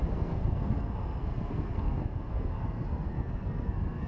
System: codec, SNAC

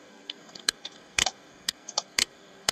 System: codec, SNAC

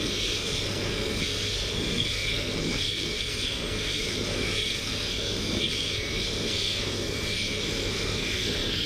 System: codec, SNAC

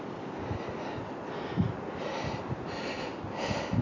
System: none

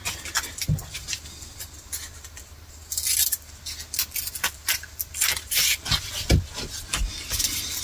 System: none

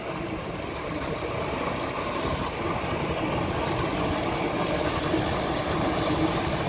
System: none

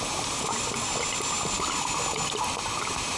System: none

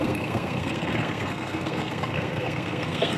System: codec, SNAC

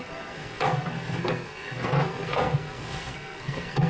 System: codec, SNAC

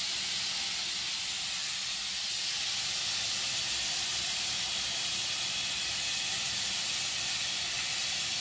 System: none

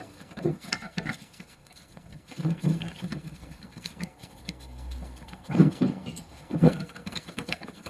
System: codec, SNAC